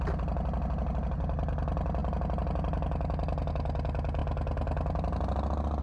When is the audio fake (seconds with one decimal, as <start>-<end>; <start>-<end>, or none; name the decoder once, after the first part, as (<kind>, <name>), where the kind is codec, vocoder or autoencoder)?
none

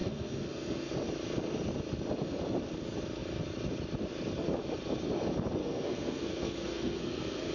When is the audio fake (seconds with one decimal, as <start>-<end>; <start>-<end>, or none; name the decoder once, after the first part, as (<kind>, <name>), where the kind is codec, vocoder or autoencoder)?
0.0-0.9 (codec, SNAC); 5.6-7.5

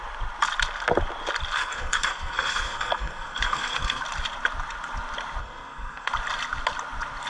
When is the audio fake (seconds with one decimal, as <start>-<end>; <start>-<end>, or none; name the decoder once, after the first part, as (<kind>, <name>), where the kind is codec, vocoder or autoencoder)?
1.6-4.0 (codec, SNAC); 5.4-6.1

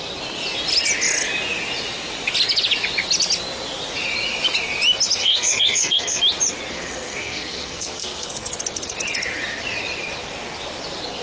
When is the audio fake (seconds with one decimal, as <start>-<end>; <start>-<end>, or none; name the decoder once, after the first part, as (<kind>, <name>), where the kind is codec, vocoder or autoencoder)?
5.2-6.2 (codec, SNAC); 6.7-8.5

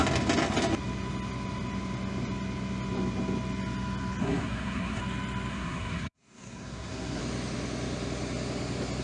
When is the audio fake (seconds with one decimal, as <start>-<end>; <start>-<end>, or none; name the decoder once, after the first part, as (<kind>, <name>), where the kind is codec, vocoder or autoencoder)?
4.2-5.0 (codec, SNAC); 5.5-7.2